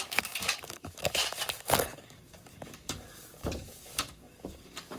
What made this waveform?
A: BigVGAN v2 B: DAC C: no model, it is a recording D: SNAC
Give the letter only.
B